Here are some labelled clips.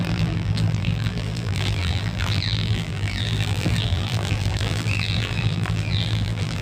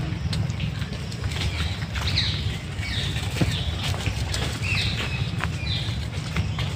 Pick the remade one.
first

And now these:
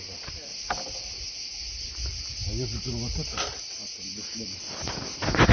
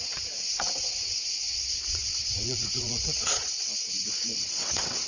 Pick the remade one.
second